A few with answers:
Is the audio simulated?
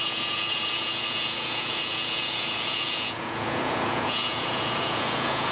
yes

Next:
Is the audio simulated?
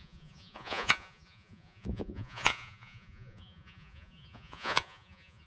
yes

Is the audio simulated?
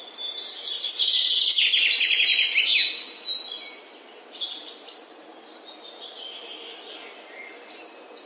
no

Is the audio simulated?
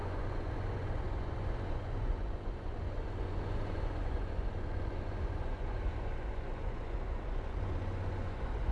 yes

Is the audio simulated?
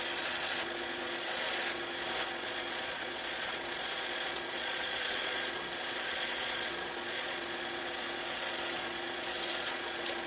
yes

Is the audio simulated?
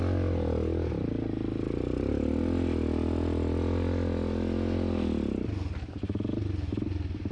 no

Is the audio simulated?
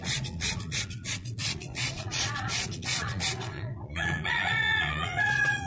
yes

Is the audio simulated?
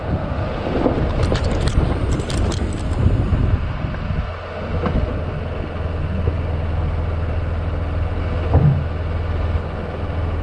no